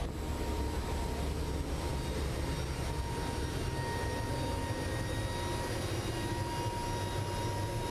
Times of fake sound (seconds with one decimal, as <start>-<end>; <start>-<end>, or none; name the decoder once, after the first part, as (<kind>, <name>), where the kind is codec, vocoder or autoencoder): none